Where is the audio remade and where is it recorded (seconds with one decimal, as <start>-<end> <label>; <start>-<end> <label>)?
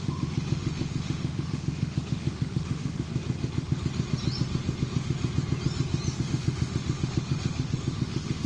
0.0-3.1 remade; 3.1-6.2 recorded; 6.2-8.5 remade